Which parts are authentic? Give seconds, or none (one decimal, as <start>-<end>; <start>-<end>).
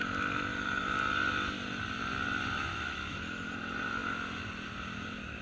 0.0-2.7; 3.5-5.4